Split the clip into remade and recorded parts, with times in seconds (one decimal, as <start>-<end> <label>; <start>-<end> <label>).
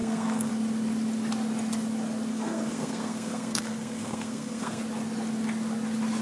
0.0-0.5 remade; 0.5-2.3 recorded; 2.3-4.8 remade; 4.8-6.2 recorded